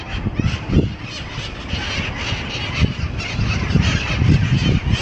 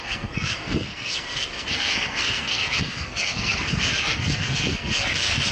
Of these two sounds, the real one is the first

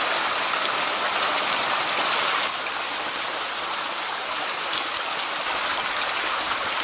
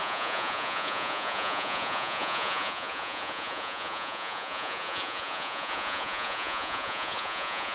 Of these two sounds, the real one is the first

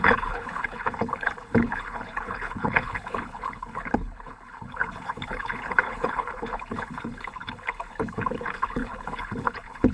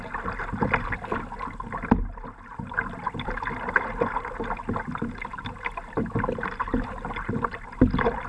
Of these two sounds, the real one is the second